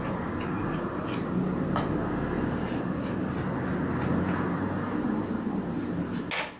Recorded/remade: recorded